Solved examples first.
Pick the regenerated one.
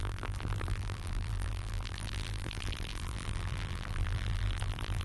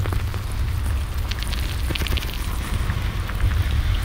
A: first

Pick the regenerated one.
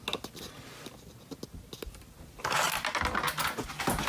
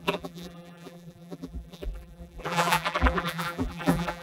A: second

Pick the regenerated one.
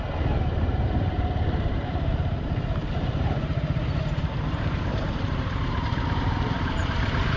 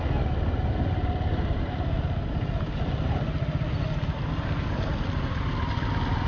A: first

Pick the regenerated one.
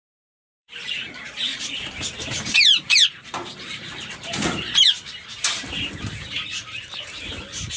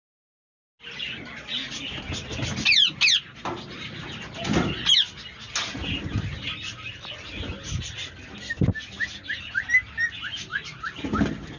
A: first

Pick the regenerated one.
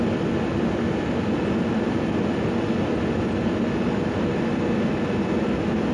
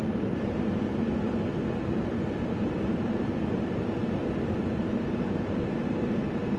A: second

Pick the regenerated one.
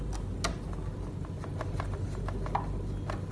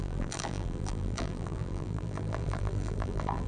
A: second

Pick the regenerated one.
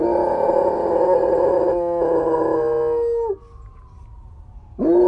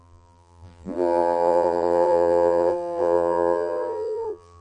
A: second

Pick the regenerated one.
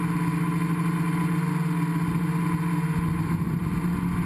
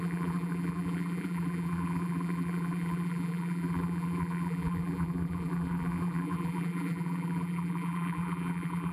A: second